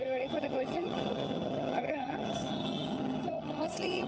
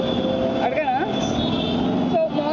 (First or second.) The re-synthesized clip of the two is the first